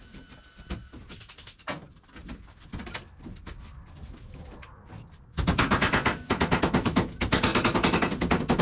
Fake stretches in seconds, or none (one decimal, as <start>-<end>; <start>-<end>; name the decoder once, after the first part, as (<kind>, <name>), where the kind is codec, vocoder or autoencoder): 0.0-4.7 (vocoder, BigVGAN v2); 5.9-7.5